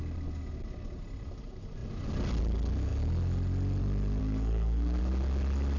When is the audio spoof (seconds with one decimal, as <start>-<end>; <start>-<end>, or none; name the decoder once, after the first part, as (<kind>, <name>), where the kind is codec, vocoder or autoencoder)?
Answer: 4.2-5.0 (codec, SNAC)